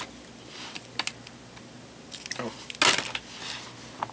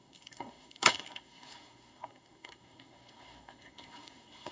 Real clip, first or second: first